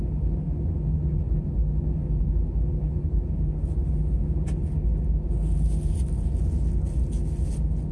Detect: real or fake real